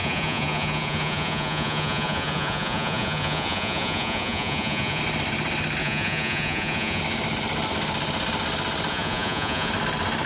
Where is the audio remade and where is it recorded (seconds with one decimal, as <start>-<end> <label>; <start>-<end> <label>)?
0.0-5.0 remade; 5.0-5.8 recorded; 5.8-7.0 remade; 7.0-8.9 recorded; 8.9-9.7 remade; 9.7-10.3 recorded